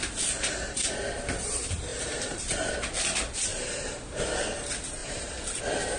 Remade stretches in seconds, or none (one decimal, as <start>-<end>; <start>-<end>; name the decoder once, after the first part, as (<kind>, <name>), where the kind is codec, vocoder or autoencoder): 1.9-2.7 (vocoder, BigVGAN v2); 3.5-4.3; 5.0-5.6